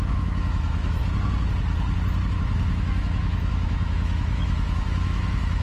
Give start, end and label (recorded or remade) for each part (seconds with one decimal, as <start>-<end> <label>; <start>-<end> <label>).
0.0-1.0 remade; 1.0-2.3 recorded; 2.3-5.6 remade